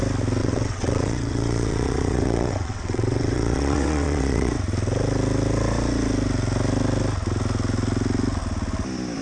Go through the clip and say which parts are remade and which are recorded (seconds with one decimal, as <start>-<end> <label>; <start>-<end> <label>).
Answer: 0.0-0.4 recorded; 0.4-4.5 remade; 4.5-9.2 recorded

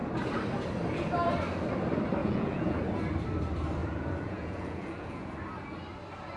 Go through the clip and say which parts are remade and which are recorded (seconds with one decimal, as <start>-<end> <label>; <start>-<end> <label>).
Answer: 0.0-2.2 recorded; 2.2-2.8 remade; 2.8-3.8 recorded; 3.8-5.3 remade; 5.3-6.4 recorded